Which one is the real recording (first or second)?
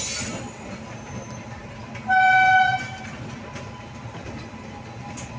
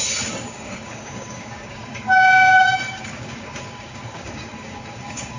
first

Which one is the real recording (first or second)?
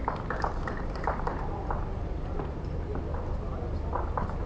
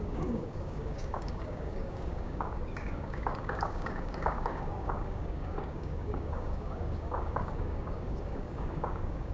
first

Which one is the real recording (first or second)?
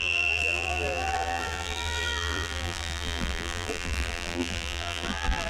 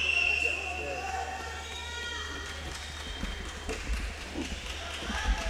second